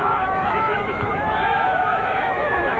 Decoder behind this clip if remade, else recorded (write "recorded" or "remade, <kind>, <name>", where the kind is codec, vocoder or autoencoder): remade, autoencoder, DAC-VAE